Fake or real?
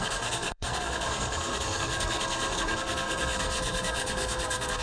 fake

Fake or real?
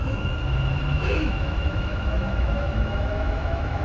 fake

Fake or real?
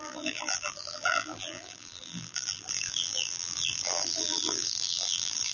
fake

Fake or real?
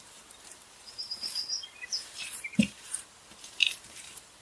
fake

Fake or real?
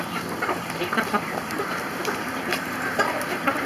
fake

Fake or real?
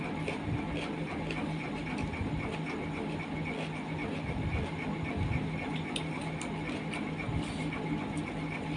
real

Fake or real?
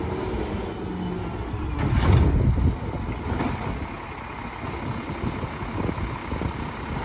real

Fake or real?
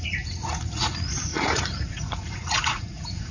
fake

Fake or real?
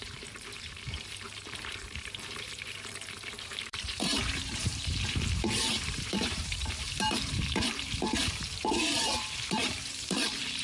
fake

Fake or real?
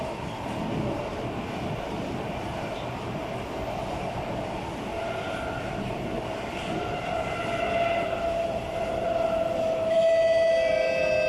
real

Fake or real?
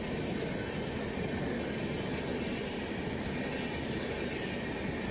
real